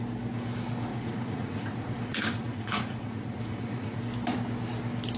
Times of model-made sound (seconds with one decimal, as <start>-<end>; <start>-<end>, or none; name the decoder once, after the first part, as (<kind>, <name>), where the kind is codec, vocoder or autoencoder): 0.9-4.0 (vocoder, Vocos)